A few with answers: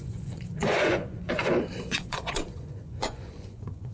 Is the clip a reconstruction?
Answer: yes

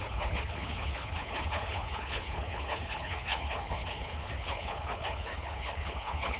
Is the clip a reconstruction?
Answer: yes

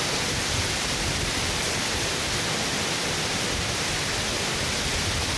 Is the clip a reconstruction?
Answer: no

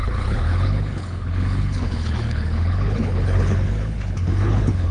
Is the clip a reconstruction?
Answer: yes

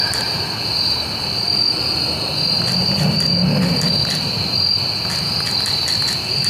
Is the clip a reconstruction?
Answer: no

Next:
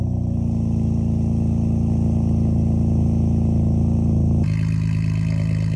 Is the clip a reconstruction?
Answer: no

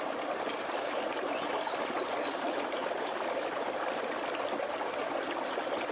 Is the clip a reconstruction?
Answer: no